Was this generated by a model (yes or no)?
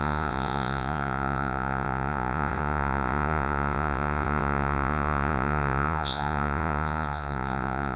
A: yes